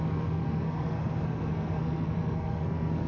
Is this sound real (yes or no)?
no